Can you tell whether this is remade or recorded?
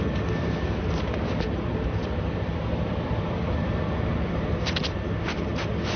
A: remade